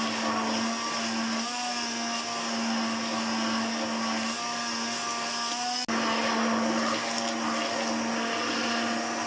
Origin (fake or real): real